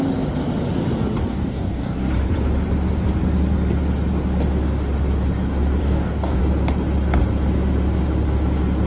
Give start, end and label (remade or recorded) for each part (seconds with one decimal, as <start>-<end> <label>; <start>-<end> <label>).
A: 0.0-1.3 recorded; 1.3-2.1 remade; 2.1-5.8 recorded; 5.8-6.4 remade; 6.4-8.9 recorded